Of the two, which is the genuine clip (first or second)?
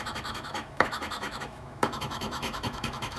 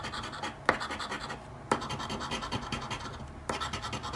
second